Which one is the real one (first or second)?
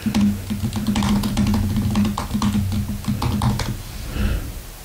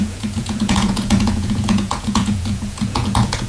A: first